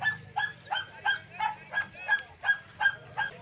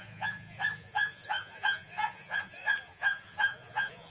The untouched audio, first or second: first